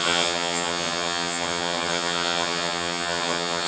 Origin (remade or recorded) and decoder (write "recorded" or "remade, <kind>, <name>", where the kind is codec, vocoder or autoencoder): remade, vocoder, HiFi-GAN